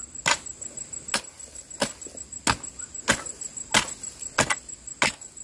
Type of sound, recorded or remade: recorded